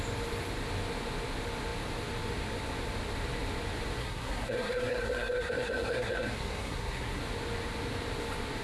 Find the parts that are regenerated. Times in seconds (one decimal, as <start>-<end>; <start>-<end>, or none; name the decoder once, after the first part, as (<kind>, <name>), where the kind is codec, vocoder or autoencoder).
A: 4.0-7.2 (codec, SNAC)

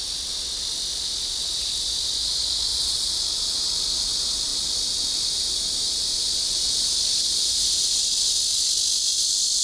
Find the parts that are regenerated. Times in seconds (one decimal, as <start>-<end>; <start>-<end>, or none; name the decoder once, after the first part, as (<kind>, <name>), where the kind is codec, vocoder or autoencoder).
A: 2.7-3.2 (vocoder, Vocos)

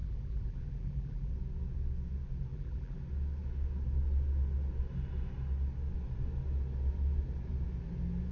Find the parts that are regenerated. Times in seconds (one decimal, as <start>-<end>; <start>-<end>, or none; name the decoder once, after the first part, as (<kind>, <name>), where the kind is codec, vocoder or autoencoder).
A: 0.0-1.3 (vocoder, BigVGAN v2); 2.5-3.0

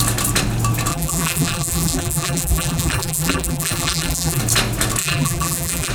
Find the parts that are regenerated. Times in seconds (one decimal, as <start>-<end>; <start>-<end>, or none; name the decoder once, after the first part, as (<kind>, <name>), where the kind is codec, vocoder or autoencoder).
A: 0.9-4.4 (vocoder, BigVGAN v2); 5.0-5.9

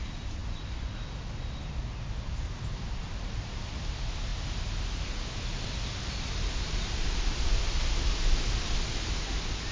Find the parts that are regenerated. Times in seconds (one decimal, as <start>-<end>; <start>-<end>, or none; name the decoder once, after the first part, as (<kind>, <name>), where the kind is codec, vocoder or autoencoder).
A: none

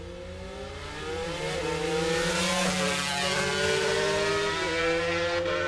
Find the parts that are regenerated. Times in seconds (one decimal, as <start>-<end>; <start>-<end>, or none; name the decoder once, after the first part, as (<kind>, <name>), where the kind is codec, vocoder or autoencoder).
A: none